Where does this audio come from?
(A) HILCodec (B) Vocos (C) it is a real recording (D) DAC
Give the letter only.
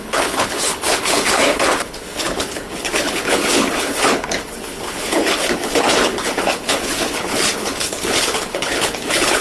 A